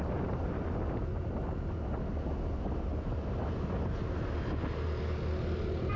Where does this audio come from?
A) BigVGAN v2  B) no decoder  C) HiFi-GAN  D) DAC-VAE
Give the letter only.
B